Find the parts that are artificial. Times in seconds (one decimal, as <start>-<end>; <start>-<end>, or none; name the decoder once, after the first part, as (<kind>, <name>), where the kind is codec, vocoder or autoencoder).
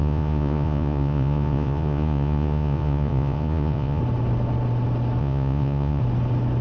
0.0-4.0 (vocoder, Vocos); 5.2-6.0